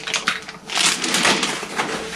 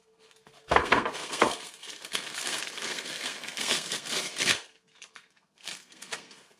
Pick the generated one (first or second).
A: second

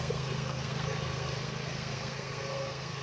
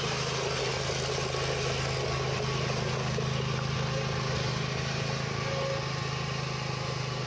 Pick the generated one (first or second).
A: first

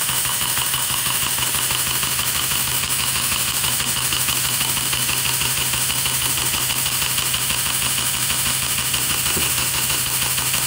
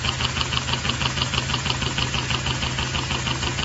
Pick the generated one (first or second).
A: first